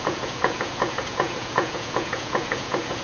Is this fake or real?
fake